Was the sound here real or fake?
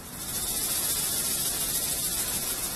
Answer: real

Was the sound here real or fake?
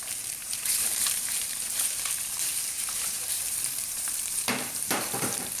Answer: fake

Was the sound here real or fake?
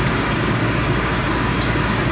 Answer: fake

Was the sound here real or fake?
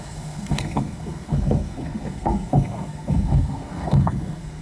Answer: fake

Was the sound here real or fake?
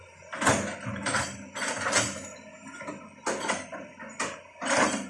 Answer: real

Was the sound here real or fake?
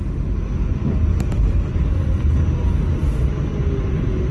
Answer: real